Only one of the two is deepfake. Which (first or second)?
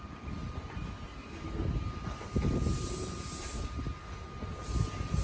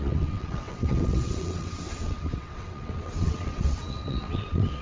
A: second